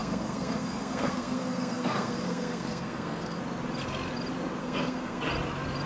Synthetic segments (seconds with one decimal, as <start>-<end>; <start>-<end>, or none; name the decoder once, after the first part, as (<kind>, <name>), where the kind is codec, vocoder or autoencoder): 0.0-3.4 (codec, SNAC); 4.6-5.2